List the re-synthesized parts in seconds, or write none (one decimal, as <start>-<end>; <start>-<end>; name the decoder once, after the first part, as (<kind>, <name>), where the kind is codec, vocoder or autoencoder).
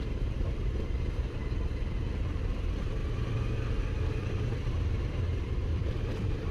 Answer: 0.0-1.4 (vocoder, BigVGAN v2); 2.1-3.0; 4.1-6.5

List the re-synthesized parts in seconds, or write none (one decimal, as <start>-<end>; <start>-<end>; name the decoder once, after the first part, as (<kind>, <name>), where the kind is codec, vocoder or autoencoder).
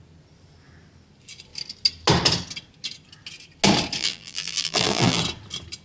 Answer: 4.0-5.2 (vocoder, BigVGAN v2)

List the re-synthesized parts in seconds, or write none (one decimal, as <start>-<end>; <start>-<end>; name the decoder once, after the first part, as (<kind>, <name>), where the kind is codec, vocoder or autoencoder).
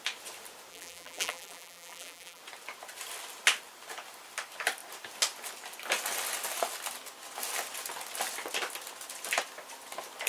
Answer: 0.7-2.4 (vocoder, BigVGAN v2)